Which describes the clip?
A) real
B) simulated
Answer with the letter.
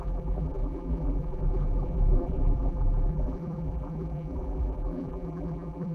B